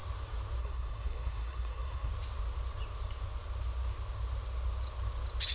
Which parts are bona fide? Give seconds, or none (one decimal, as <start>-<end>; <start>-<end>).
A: 0.0-0.6; 2.1-5.5

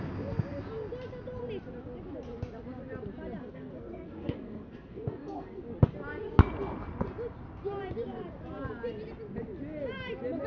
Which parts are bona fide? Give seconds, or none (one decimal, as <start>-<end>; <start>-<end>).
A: 0.0-3.4; 5.6-10.5

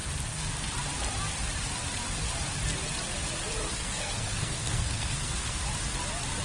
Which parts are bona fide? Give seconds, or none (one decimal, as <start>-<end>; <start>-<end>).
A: 0.0-3.7; 5.6-6.4